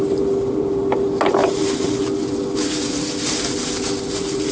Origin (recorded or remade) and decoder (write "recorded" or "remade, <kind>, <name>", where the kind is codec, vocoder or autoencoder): recorded